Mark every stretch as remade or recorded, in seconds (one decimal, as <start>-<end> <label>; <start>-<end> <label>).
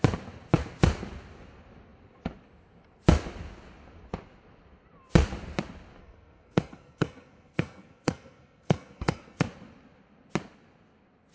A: 0.0-6.0 recorded; 6.0-9.4 remade; 9.4-11.3 recorded